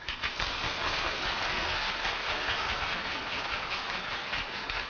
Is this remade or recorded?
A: remade